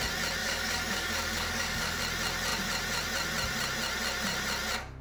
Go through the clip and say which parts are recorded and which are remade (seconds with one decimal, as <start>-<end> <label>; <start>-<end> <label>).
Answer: 0.0-0.4 recorded; 0.4-2.0 remade; 2.0-5.0 recorded